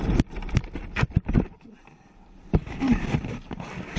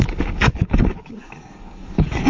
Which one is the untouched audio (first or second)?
first